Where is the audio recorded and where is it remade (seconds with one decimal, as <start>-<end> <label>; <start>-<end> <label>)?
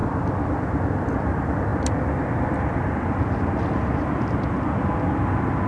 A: 0.0-5.7 recorded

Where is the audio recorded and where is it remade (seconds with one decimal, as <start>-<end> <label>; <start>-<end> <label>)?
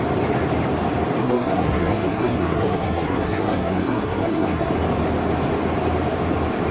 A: 0.0-1.2 recorded; 1.2-4.7 remade; 4.7-6.7 recorded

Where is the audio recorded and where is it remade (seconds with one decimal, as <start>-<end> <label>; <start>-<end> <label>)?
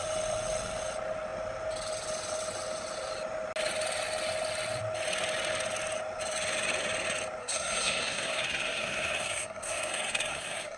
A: 0.0-7.4 recorded; 7.4-10.8 remade